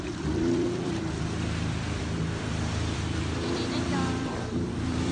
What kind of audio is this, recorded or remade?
remade